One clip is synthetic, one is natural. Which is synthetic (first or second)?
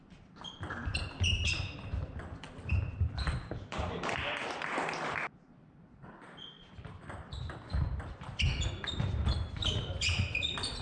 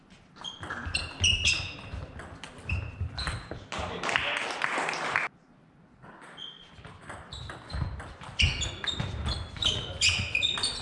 first